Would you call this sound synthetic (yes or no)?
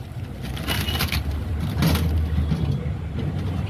no